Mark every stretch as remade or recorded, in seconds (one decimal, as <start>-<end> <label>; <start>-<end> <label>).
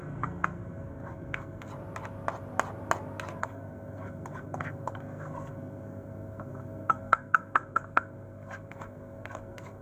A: 0.0-1.7 remade; 1.7-3.4 recorded; 3.4-9.8 remade